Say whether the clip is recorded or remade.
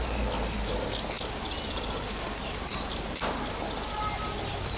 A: recorded